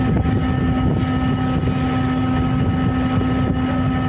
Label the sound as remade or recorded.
recorded